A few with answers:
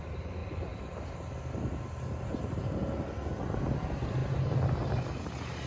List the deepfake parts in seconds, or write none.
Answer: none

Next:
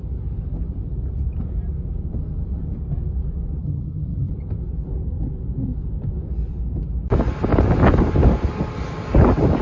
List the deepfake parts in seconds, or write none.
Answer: 3.6-4.3

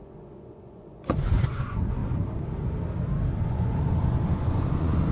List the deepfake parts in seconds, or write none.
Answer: 0.0-2.0; 3.5-5.1

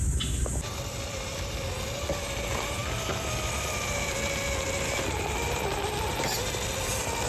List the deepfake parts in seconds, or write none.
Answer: none

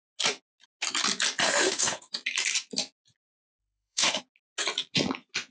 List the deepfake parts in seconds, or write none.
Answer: 1.4-2.1; 3.6-4.2

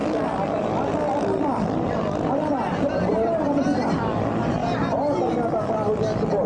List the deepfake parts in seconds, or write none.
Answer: 0.0-4.6

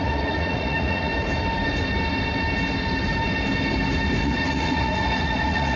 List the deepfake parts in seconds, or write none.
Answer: 0.0-1.1; 4.2-5.8

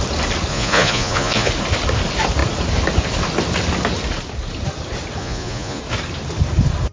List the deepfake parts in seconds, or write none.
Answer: 0.5-1.5; 5.2-5.8